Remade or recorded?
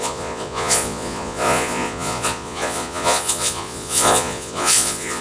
remade